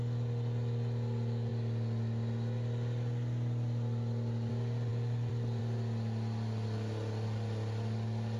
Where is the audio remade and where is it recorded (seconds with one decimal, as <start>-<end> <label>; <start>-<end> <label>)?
0.0-4.9 recorded; 4.9-5.6 remade; 5.6-8.4 recorded